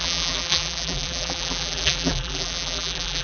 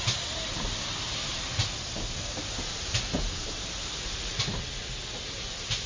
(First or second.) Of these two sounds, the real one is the second